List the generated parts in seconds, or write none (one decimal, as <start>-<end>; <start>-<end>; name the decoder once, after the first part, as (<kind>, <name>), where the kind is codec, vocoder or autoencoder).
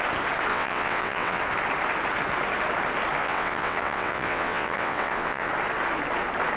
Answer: 0.5-1.4 (vocoder, WaveNeXt); 3.2-5.5